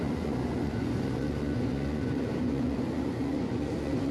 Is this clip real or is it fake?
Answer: fake